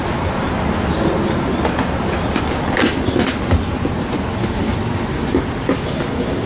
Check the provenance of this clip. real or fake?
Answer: real